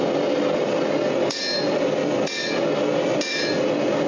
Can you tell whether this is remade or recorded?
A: recorded